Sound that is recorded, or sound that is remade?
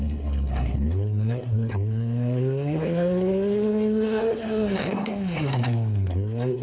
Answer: remade